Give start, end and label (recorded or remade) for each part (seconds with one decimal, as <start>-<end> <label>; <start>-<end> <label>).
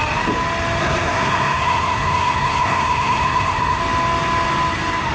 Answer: 0.0-0.8 recorded; 0.8-3.8 remade; 3.8-5.1 recorded